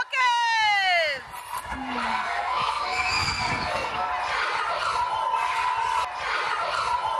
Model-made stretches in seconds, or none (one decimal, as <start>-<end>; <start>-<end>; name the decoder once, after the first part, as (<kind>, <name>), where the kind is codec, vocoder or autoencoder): 2.1-4.1 (codec, SNAC)